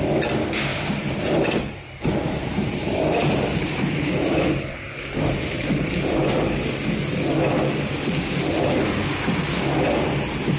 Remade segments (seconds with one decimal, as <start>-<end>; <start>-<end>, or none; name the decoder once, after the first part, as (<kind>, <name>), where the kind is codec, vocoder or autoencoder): 0.7-5.9 (vocoder, BigVGAN v2)